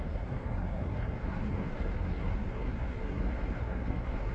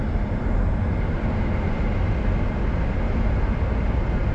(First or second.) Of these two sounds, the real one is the second